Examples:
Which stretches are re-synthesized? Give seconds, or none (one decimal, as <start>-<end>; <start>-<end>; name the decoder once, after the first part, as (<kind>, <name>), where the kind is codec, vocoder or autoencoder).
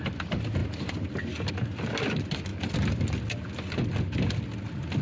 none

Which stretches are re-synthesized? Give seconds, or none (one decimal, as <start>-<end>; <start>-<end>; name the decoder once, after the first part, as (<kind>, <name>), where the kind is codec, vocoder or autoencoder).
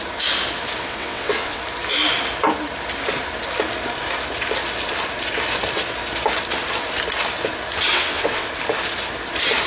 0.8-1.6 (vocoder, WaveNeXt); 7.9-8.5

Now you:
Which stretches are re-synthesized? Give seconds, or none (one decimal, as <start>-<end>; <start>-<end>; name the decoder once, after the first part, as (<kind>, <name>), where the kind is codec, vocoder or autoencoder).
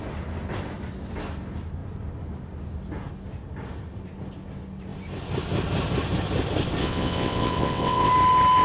6.8-8.1 (vocoder, WaveNeXt)